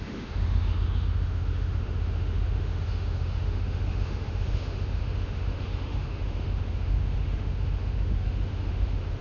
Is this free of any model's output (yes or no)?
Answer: no